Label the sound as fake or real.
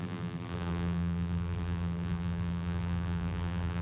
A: fake